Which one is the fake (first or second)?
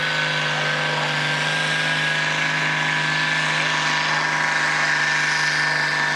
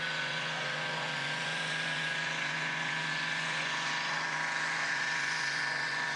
second